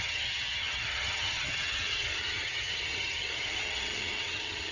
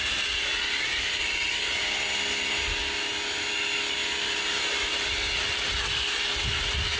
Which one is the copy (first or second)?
first